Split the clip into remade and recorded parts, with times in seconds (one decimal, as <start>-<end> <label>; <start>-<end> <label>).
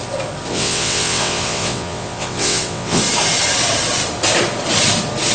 0.0-0.5 recorded; 0.5-3.0 remade; 3.0-5.3 recorded